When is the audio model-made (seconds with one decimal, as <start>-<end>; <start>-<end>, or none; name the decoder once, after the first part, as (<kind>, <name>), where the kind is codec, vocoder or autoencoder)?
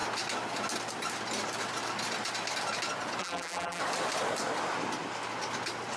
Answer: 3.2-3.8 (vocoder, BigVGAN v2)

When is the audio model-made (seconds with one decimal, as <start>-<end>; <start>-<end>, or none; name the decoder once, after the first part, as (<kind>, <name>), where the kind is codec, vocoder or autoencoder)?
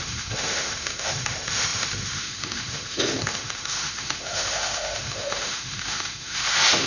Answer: 0.0-6.9 (autoencoder, DAC-VAE)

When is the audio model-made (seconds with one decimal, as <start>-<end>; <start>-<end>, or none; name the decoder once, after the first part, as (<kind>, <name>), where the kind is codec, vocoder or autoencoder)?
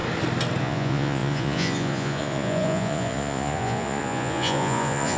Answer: 0.6-5.2 (vocoder, Vocos)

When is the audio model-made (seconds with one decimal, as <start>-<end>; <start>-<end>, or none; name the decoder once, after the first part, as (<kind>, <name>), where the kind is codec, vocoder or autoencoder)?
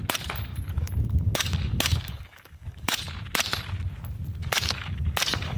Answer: 0.5-3.0 (codec, DAC); 4.4-5.6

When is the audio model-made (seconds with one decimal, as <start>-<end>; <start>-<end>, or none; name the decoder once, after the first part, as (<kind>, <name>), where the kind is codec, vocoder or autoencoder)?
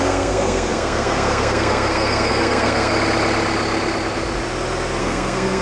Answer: 0.0-2.9 (codec, SNAC); 5.0-5.6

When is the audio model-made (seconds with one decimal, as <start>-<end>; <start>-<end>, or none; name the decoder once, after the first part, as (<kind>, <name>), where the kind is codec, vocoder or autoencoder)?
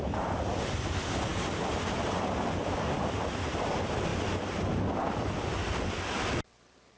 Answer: 0.0-1.3 (vocoder, BigVGAN v2); 3.3-4.1; 5.1-7.0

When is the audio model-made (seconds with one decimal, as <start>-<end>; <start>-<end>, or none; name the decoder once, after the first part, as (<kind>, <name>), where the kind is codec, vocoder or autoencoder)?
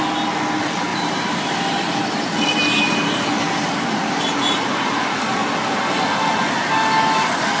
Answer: 0.9-5.3 (vocoder, BigVGAN v2)